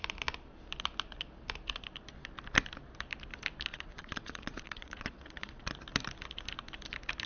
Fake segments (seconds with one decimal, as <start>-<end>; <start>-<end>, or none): 3.7-5.6